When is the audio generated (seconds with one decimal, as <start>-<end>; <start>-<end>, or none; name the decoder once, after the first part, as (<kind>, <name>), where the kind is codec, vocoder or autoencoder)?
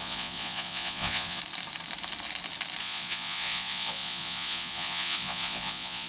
0.0-1.4 (vocoder, Vocos); 2.8-6.1